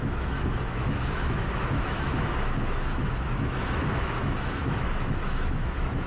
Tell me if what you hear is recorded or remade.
remade